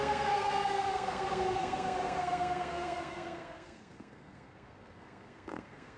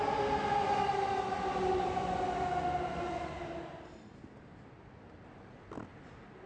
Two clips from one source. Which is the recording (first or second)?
second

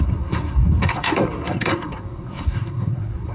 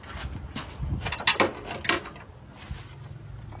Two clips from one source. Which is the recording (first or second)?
second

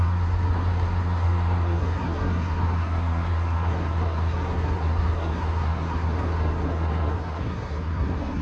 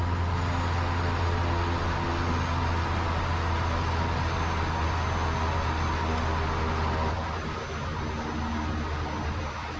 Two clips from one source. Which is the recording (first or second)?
second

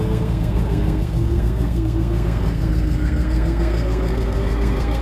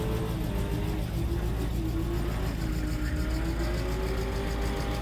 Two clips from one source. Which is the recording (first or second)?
second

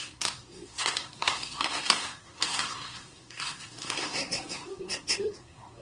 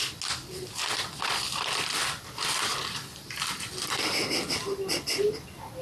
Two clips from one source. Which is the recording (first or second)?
second